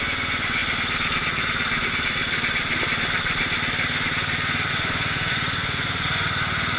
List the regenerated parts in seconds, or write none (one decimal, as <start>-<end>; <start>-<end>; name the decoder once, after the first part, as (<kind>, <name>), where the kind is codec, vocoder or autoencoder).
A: 0.0-0.6 (vocoder, Vocos); 4.7-6.8

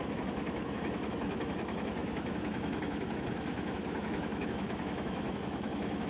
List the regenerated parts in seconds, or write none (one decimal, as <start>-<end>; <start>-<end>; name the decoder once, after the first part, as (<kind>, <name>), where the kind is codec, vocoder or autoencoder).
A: 0.0-6.1 (autoencoder, DAC-VAE)

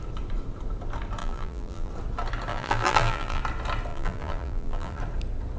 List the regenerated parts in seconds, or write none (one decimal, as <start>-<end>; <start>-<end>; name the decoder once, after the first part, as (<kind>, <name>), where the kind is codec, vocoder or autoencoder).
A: 1.2-1.9 (vocoder, BigVGAN v2); 2.5-3.4; 3.9-5.0

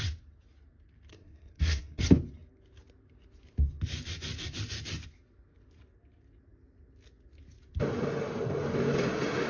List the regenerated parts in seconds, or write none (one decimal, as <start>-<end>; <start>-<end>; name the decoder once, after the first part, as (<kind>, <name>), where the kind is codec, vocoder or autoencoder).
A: 1.1-2.0 (codec, SNAC)

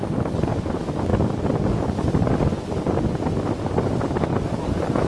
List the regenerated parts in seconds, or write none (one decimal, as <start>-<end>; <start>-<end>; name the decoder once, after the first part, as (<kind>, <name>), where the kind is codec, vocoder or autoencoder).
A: none

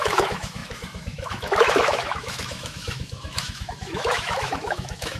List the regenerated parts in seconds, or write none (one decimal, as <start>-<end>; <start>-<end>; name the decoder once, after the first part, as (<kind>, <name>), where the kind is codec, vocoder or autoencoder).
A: 0.0-5.2 (autoencoder, DAC-VAE)